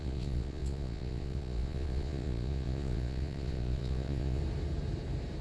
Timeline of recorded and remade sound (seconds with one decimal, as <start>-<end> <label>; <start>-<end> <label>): 0.0-4.4 remade; 4.4-5.4 recorded